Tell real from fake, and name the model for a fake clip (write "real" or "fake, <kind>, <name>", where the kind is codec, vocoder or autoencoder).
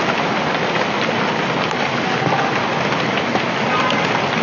real